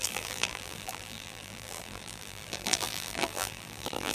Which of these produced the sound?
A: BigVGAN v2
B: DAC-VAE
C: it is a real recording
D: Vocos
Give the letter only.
A